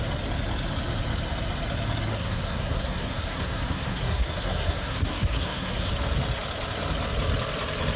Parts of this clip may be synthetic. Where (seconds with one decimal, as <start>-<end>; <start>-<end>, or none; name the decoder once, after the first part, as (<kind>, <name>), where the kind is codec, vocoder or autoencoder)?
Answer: 2.1-5.9 (codec, SNAC)